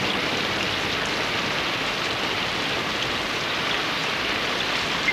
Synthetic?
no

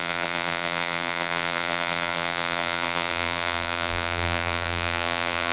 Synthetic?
yes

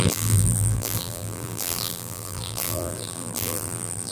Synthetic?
yes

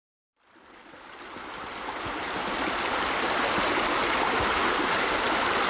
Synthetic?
no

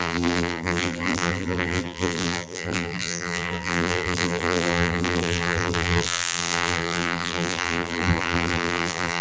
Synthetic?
yes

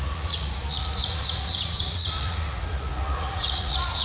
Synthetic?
yes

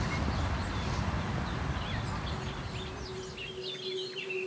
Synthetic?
no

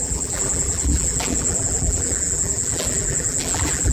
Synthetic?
yes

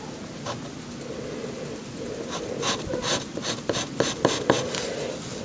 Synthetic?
no